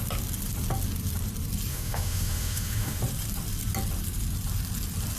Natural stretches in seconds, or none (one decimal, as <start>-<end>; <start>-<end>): 0.0-1.7; 3.0-5.2